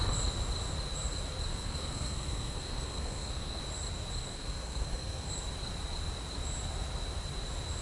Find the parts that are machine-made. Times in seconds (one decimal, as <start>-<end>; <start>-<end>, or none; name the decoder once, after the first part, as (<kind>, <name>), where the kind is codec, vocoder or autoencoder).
1.5-3.6 (codec, SNAC); 4.3-5.3